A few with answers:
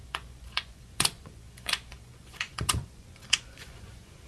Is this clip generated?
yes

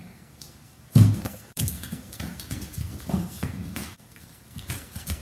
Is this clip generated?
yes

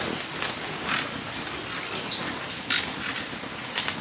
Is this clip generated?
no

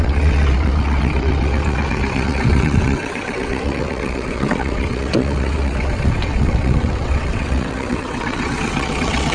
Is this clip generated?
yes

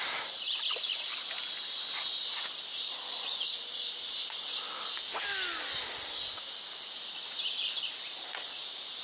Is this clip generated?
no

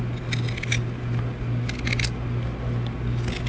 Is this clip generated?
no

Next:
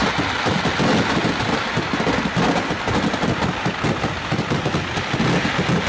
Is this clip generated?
no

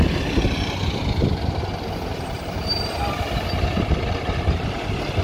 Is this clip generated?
no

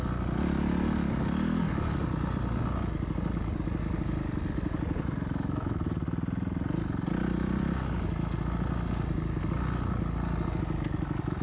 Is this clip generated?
no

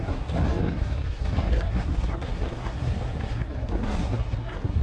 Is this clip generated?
yes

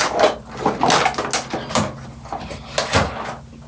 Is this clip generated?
no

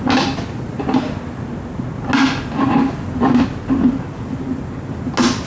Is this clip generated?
no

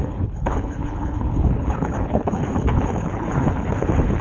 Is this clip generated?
yes